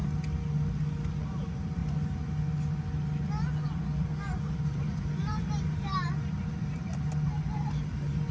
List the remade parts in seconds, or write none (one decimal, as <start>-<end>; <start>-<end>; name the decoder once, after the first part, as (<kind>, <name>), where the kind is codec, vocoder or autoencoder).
1.2-1.8 (vocoder, BigVGAN v2); 4.5-8.3